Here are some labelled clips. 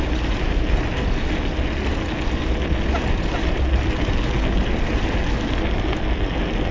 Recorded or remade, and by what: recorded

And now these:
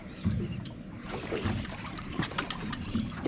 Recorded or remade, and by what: remade, vocoder, BigVGAN v2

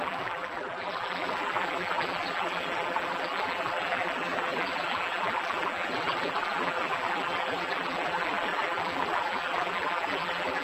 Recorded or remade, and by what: remade, vocoder, BigVGAN v2